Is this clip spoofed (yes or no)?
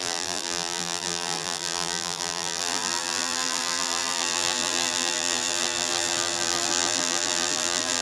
yes